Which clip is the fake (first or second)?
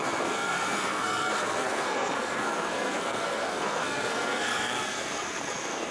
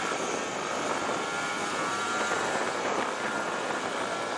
first